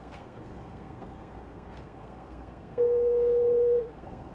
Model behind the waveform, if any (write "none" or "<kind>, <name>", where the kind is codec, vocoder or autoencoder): codec, SNAC